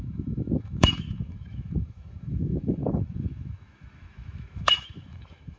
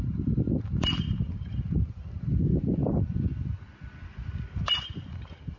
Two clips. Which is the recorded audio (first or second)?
second